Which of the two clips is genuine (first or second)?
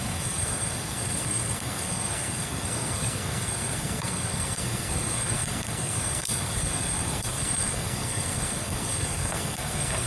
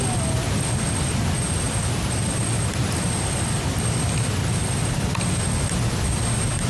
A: second